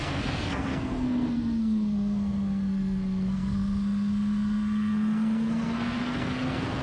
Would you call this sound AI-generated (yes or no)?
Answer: yes